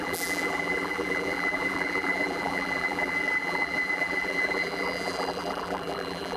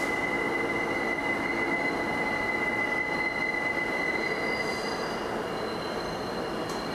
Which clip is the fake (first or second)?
first